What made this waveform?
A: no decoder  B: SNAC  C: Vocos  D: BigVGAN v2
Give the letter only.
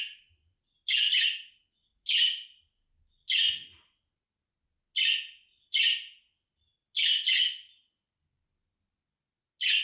A